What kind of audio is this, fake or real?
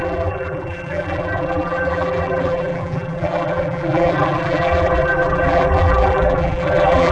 fake